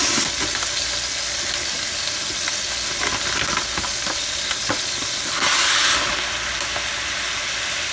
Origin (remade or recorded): recorded